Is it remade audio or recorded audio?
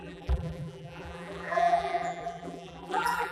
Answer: remade